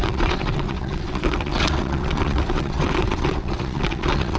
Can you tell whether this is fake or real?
fake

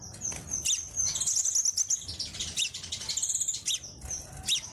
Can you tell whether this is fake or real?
real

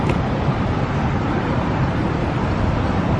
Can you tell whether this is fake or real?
fake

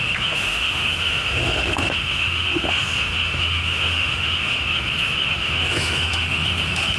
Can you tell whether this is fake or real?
fake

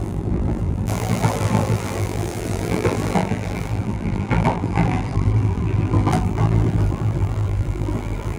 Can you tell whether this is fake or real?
fake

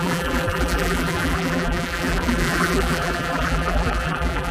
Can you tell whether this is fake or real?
fake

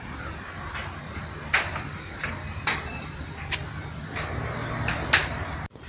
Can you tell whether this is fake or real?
real